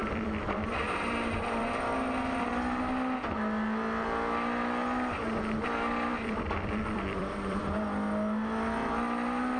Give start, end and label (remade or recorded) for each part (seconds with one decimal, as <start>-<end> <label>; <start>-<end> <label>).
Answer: 0.0-1.6 remade; 1.6-6.1 recorded; 6.1-7.6 remade; 7.6-9.6 recorded